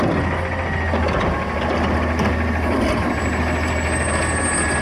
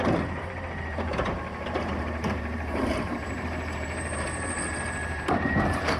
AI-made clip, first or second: second